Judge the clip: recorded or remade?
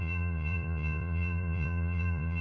remade